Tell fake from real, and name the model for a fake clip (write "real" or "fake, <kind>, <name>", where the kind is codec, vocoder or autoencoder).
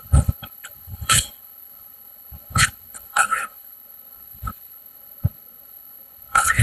fake, codec, HILCodec